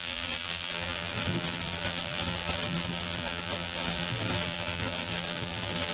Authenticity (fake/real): fake